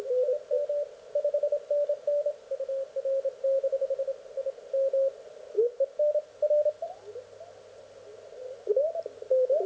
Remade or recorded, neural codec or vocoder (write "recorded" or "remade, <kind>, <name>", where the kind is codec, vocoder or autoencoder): recorded